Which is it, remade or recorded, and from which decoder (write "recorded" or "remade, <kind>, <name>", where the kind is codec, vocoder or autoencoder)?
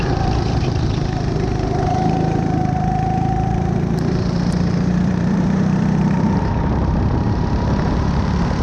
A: remade, vocoder, BigVGAN v2